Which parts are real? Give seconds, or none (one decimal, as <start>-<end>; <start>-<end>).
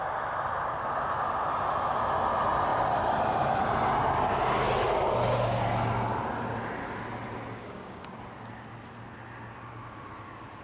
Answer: 0.0-7.6; 8.2-10.6